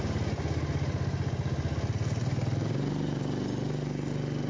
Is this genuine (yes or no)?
yes